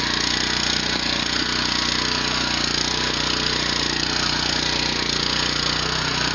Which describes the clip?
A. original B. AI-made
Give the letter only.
A